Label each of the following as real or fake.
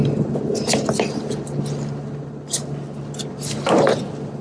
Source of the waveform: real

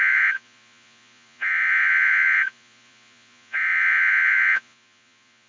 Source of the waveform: fake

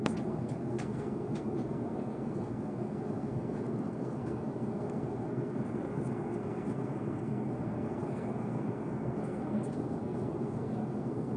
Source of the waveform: fake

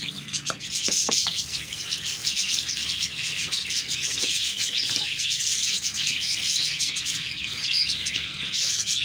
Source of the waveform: fake